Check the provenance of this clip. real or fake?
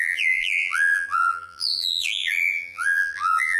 fake